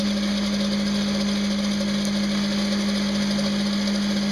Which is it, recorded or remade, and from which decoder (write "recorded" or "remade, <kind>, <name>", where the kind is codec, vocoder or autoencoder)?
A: recorded